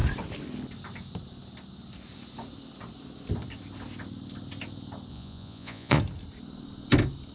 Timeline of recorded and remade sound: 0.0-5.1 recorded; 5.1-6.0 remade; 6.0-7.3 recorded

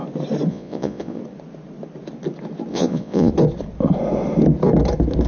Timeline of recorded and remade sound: 0.0-0.5 recorded; 0.5-1.2 remade; 1.2-2.7 recorded; 2.7-3.3 remade; 3.3-5.3 recorded

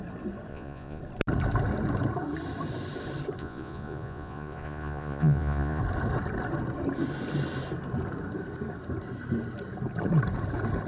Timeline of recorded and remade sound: 0.0-0.5 recorded; 0.5-1.0 remade; 1.0-3.4 recorded; 3.4-5.8 remade; 5.8-10.9 recorded